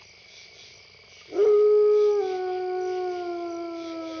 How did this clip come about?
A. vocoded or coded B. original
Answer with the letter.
B